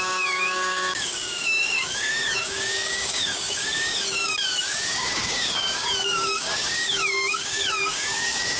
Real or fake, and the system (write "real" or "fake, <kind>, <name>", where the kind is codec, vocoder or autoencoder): fake, codec, DAC